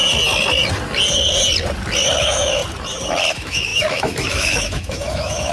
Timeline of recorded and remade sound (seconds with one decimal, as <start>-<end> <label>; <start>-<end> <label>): 0.0-2.2 recorded; 2.2-2.6 remade; 2.6-3.3 recorded; 3.3-5.5 remade